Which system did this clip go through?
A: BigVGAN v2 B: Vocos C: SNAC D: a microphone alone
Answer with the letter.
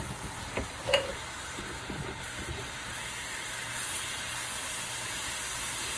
D